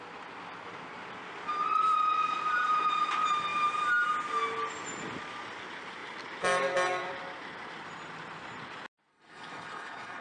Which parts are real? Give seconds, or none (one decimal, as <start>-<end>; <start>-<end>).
0.0-9.1